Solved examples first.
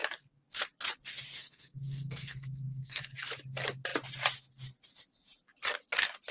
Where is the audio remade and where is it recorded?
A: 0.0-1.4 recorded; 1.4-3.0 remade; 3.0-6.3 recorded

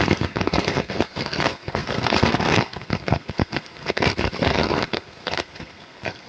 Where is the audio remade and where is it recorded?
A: 0.0-6.3 remade

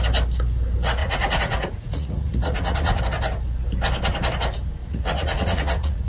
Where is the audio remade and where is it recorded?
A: 0.0-1.0 recorded; 1.0-3.0 remade; 3.0-4.8 recorded; 4.8-6.1 remade

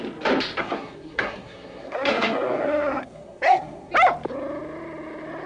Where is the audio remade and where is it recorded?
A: 0.0-0.6 recorded; 0.6-3.9 remade; 3.9-5.5 recorded

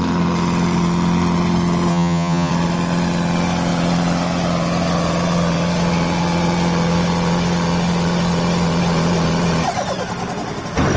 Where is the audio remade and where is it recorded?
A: 0.0-1.9 recorded; 1.9-2.5 remade; 2.5-11.0 recorded

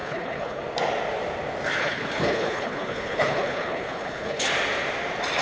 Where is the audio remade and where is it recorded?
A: 0.0-0.6 remade; 0.6-1.8 recorded; 1.8-4.5 remade; 4.5-5.4 recorded

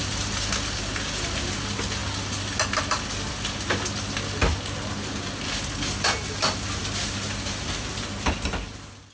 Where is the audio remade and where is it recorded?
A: 0.0-9.1 recorded

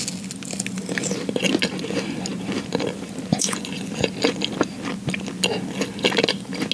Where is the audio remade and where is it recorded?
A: 0.0-3.3 recorded; 3.3-3.9 remade; 3.9-6.7 recorded